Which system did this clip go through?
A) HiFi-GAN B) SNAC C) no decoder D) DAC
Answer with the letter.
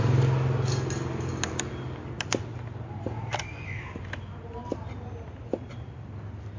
C